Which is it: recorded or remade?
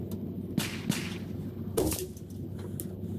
recorded